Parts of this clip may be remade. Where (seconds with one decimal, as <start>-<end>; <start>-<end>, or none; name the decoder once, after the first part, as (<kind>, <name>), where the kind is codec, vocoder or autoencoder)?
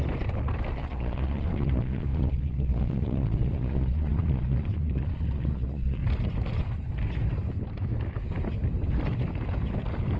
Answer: 0.7-6.0 (vocoder, Vocos)